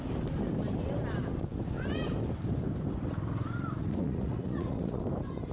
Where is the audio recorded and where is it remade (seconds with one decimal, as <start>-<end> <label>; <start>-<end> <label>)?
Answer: 0.0-3.8 recorded; 3.8-5.0 remade; 5.0-5.5 recorded